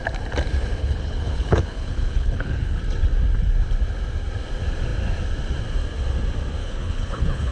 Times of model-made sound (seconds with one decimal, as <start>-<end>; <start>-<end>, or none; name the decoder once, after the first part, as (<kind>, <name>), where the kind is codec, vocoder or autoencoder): 0.8-2.8 (codec, HILCodec); 6.6-7.5